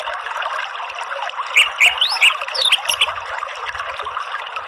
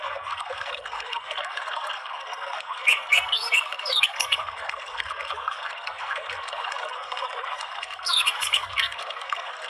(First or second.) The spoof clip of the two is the second